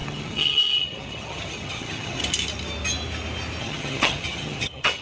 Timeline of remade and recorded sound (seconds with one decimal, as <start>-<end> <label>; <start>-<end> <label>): 0.0-2.2 remade; 2.2-3.6 recorded; 3.6-5.0 remade